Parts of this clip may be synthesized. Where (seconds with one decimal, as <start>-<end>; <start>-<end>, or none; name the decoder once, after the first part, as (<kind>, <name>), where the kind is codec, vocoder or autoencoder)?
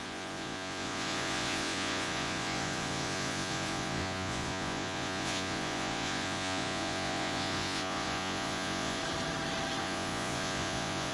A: 0.0-9.0 (vocoder, Vocos); 9.8-11.1